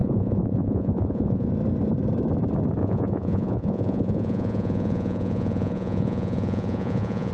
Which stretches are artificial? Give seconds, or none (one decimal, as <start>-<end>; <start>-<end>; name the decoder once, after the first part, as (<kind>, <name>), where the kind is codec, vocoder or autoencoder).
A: 0.0-1.5 (vocoder, Vocos); 2.8-7.3